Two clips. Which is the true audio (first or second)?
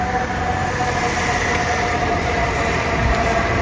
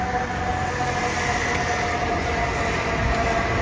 second